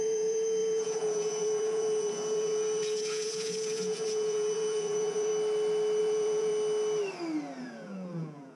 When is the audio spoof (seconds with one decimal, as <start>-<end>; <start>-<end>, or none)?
0.0-5.3; 6.0-6.5; 7.6-8.6